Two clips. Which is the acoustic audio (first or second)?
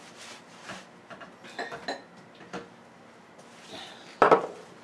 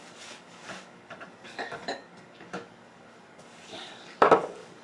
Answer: first